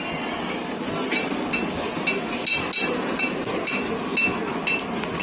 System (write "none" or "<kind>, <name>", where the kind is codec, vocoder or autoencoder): none